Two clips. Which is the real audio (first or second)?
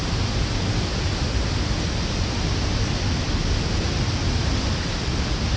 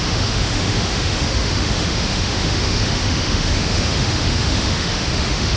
first